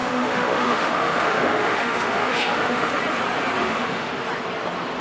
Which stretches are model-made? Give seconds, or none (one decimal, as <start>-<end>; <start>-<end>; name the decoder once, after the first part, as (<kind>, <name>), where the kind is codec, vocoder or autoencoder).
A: 0.0-3.0 (autoencoder, DAC-VAE); 3.6-4.1

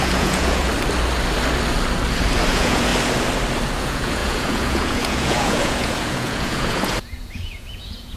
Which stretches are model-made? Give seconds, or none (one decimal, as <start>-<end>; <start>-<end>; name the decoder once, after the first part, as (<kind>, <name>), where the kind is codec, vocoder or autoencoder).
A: 0.0-0.7 (vocoder, Vocos); 2.5-2.9; 3.8-8.2

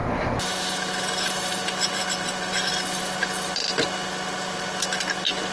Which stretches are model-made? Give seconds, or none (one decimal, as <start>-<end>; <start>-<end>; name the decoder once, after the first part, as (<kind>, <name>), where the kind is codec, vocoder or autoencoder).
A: none

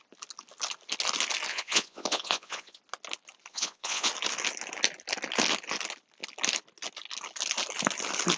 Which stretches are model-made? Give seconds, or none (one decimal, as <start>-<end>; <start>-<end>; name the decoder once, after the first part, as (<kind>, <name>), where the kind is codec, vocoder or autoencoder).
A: 1.5-2.8 (vocoder, Vocos); 3.5-4.1

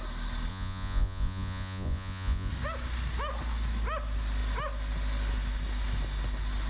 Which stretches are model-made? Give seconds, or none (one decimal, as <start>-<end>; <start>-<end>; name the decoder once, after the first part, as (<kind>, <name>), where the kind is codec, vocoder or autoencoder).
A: 0.5-2.5 (vocoder, Vocos)

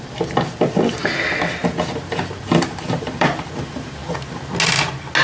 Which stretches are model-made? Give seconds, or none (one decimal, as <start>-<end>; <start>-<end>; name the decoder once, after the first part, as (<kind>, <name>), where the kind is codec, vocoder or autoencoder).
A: 1.6-3.6 (vocoder, BigVGAN v2)